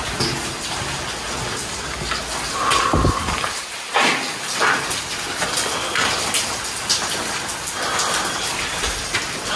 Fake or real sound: real